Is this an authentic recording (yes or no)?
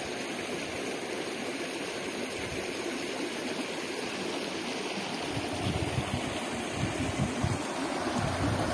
yes